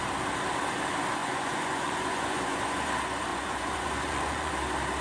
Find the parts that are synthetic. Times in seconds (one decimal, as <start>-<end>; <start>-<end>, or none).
1.2-2.9; 3.3-4.5